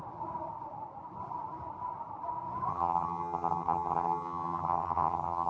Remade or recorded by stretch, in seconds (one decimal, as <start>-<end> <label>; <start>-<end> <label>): 0.0-2.7 recorded; 2.7-5.5 remade